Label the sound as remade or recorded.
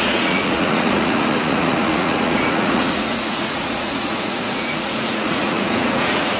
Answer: remade